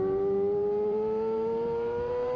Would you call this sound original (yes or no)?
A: no